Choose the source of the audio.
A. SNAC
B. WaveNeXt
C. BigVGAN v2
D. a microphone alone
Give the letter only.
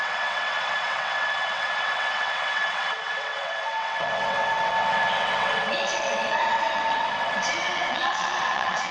B